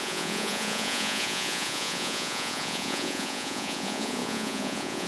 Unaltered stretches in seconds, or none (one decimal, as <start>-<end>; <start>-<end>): none